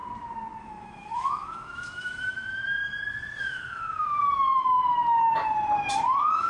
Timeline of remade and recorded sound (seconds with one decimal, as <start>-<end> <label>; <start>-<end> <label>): 0.0-0.6 recorded; 0.6-2.8 remade; 2.8-3.4 recorded; 3.4-4.8 remade; 4.8-5.9 recorded; 5.9-6.5 remade